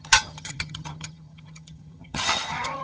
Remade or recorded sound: remade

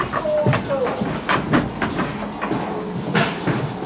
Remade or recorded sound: recorded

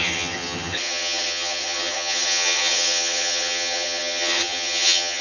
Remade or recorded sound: remade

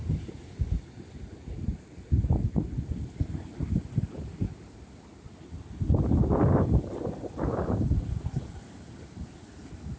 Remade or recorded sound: recorded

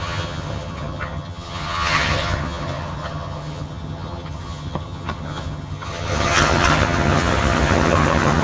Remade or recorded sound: remade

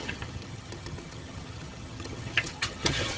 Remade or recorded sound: remade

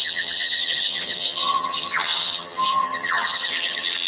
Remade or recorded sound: remade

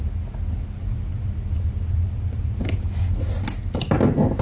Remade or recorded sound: recorded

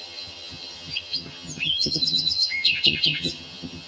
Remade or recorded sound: remade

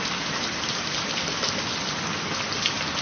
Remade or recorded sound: recorded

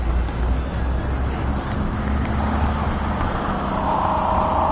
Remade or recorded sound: recorded